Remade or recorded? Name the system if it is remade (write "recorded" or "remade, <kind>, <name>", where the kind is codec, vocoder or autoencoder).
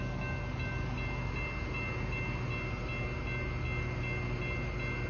recorded